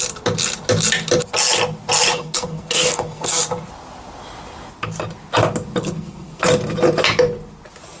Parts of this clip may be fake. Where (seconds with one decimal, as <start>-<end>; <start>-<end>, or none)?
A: 2.1-3.4; 5.8-6.4